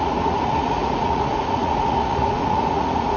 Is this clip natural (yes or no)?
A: no